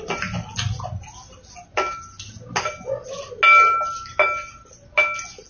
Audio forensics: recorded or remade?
recorded